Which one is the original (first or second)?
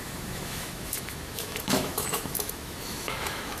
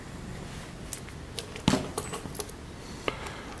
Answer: second